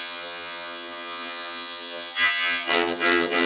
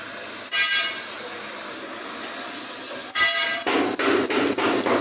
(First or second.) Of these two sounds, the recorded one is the second